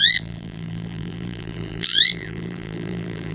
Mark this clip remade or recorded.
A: remade